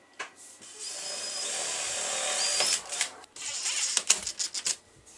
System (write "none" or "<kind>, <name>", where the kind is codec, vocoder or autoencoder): none